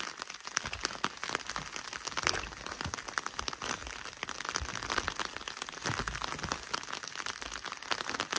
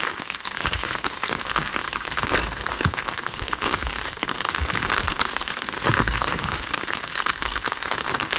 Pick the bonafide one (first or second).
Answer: first